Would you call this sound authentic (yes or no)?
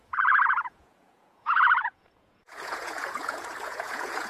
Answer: no